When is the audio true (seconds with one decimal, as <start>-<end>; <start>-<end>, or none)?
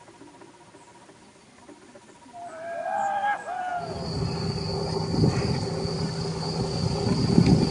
0.0-7.7